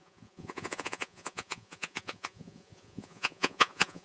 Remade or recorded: remade